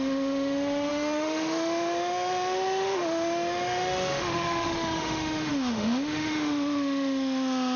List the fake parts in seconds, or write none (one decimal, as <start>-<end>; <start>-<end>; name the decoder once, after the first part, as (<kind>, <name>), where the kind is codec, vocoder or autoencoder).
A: 0.0-7.8 (autoencoder, DAC-VAE)